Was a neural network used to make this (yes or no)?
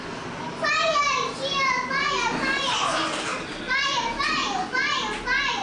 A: no